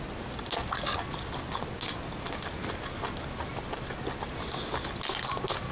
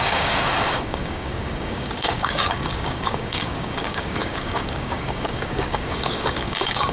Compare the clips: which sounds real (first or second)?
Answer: first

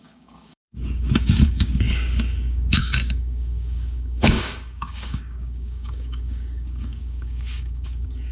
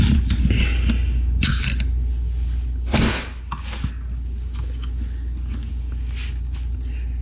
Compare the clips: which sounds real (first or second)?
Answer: second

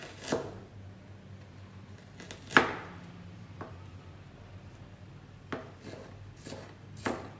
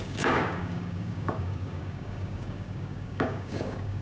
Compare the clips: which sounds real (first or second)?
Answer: first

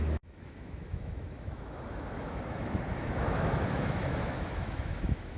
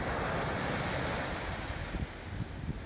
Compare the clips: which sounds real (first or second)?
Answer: second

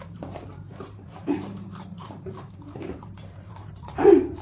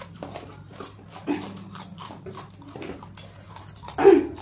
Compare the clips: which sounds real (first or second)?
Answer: second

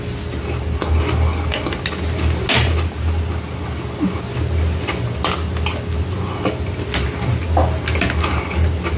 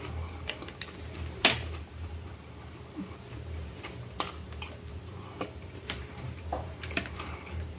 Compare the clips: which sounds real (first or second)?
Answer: first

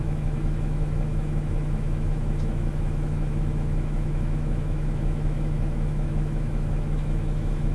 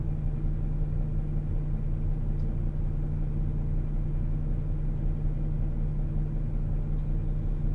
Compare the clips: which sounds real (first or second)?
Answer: second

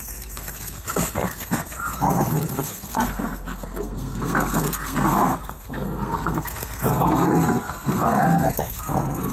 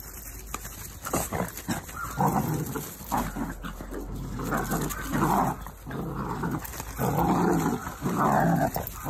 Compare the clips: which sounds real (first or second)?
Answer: second